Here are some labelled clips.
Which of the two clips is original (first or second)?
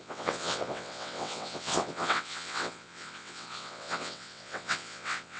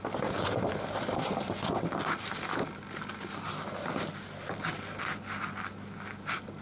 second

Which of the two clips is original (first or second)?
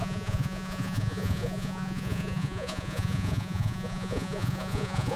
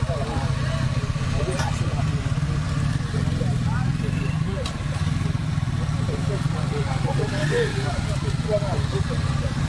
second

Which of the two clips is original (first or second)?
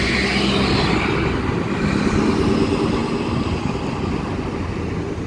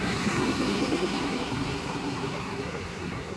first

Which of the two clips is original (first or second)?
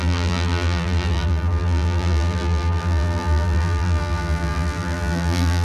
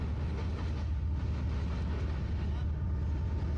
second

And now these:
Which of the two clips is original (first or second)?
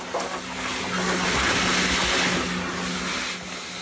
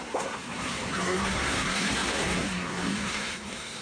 first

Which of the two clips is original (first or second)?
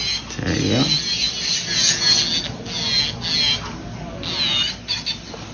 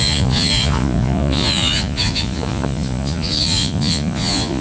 first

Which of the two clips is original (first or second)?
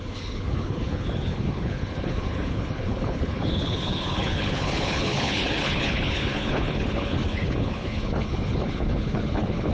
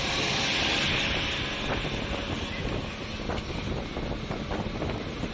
second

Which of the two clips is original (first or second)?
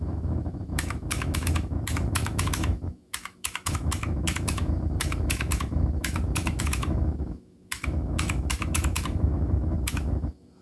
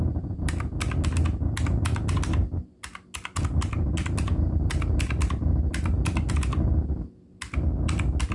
second